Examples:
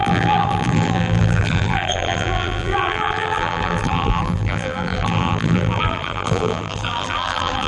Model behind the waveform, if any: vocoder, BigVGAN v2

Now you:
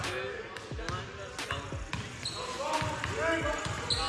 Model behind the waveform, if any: none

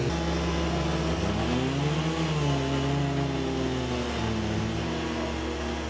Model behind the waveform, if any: none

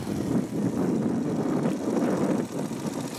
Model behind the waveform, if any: none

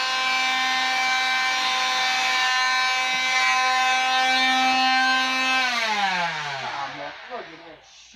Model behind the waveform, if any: none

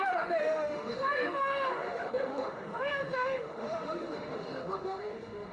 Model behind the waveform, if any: autoencoder, DAC-VAE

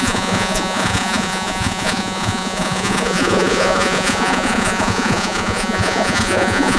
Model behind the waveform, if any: vocoder, Vocos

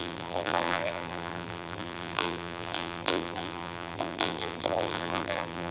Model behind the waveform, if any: vocoder, BigVGAN v2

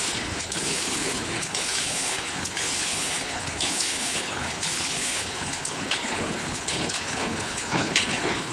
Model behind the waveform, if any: codec, HILCodec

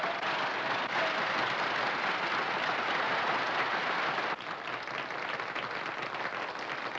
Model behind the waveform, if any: none